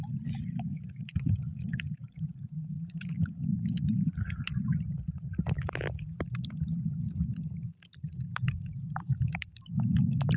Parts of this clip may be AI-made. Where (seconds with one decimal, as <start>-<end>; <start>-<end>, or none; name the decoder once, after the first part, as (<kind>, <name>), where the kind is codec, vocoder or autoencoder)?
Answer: 0.7-4.6 (vocoder, Vocos)

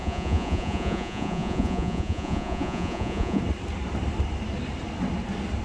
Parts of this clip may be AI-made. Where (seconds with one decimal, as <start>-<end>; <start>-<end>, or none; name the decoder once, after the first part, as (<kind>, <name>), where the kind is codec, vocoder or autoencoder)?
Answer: 0.0-3.4 (vocoder, Vocos)

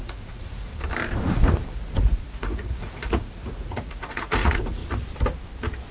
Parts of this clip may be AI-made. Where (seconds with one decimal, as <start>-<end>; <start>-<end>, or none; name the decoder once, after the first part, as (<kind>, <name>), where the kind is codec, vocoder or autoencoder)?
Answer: 0.0-0.7 (vocoder, Vocos); 1.7-4.8

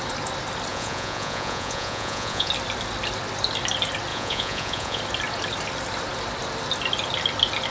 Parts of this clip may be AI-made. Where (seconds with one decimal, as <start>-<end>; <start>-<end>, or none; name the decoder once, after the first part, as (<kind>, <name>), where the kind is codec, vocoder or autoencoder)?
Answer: 0.7-2.5 (vocoder, Vocos); 4.1-5.0

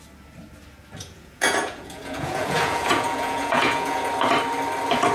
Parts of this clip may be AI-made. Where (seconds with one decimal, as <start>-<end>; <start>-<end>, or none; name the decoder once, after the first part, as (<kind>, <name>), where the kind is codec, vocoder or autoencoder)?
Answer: 1.0-4.1 (vocoder, Vocos)